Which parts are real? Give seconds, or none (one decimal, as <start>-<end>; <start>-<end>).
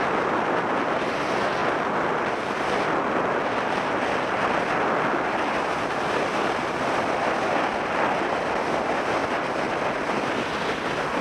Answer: 0.0-11.2